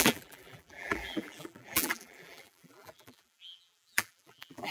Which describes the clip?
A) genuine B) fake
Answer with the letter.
B